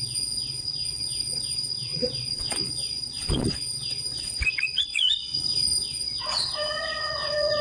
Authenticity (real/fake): fake